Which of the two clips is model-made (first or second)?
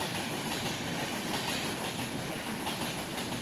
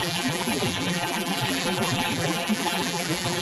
second